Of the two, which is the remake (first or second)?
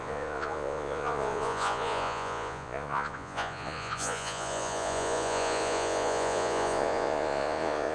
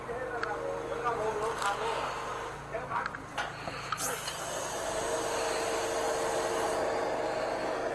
first